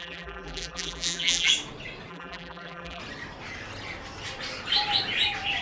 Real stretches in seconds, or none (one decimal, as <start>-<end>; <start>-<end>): 1.5-2.1; 3.0-5.6